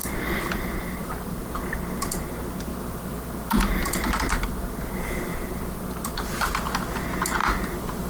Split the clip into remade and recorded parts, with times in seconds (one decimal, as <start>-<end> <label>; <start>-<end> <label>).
0.0-1.8 remade; 1.8-2.7 recorded; 2.7-4.5 remade; 4.5-5.3 recorded; 5.3-6.5 remade; 6.5-7.4 recorded; 7.4-8.1 remade